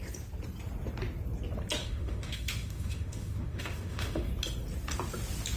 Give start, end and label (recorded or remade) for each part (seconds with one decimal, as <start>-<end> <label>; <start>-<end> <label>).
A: 0.0-1.8 recorded; 1.8-4.3 remade; 4.3-5.6 recorded